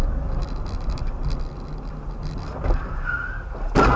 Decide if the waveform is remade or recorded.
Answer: recorded